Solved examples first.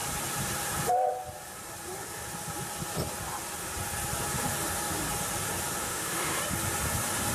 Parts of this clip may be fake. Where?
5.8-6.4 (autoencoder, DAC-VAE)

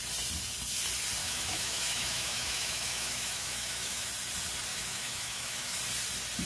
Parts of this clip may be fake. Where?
1.2-4.1 (autoencoder, DAC-VAE); 4.7-5.8

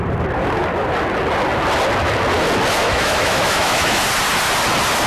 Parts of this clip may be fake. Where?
2.8-4.0 (autoencoder, DAC-VAE)

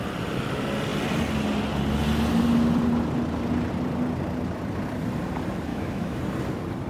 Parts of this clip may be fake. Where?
5.7-6.2 (autoencoder, DAC-VAE)

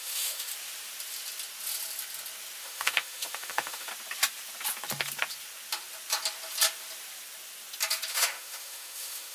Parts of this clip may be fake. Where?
0.0-0.5 (autoencoder, DAC-VAE); 2.6-3.9; 8.1-9.3

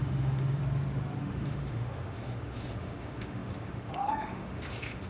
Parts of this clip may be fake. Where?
0.0-0.6 (autoencoder, DAC-VAE); 1.2-5.1